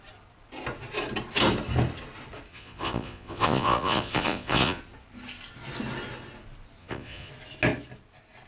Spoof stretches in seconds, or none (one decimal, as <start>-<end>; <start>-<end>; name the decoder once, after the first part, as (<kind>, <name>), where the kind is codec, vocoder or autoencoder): 2.5-4.8 (vocoder, Vocos); 6.8-7.3